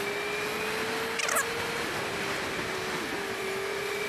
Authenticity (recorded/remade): recorded